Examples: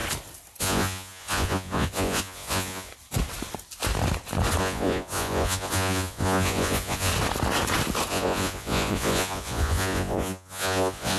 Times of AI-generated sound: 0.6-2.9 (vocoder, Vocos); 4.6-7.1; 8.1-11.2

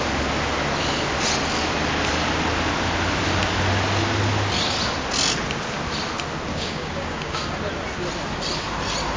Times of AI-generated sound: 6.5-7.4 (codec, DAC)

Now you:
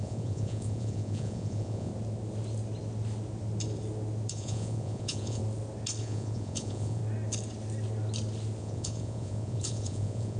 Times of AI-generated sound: 0.0-1.9 (vocoder, Vocos); 4.3-5.4; 6.0-7.0; 8.6-10.4

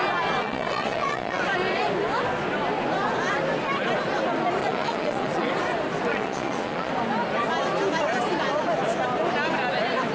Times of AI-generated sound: 0.4-1.4 (vocoder, Vocos); 4.6-5.5; 6.1-6.9

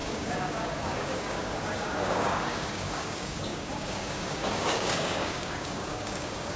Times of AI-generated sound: 0.0-6.6 (codec, DAC)